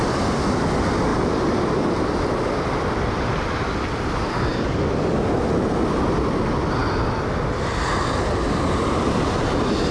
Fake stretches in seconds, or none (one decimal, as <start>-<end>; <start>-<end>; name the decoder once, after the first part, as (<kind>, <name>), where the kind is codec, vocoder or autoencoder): none